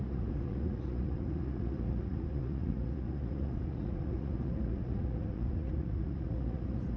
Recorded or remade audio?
remade